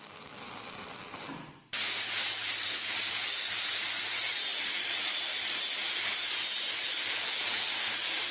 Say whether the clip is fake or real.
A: real